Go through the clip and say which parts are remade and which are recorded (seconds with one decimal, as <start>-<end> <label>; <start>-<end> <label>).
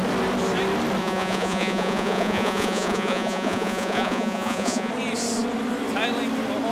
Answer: 0.0-1.0 recorded; 1.0-4.9 remade; 4.9-6.7 recorded